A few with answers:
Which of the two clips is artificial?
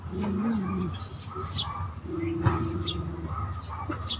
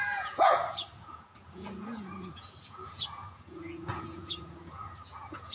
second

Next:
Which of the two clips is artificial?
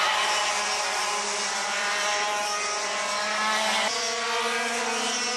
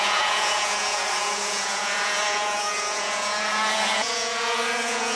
second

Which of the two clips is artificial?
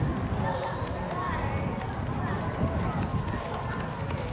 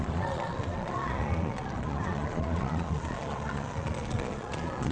second